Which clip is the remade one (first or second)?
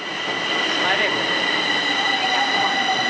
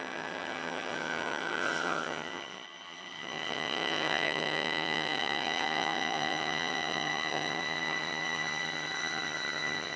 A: second